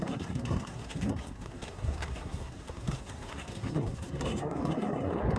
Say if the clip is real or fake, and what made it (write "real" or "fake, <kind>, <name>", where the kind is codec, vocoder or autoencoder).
fake, codec, SNAC